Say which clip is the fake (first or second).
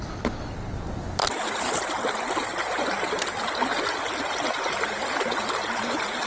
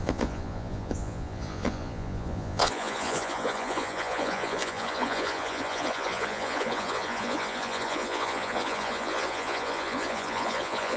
second